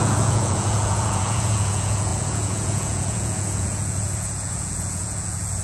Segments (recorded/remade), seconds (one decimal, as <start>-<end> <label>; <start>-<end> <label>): 0.0-5.6 remade